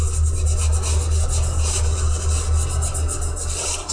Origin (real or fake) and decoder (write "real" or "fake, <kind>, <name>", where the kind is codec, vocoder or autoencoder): real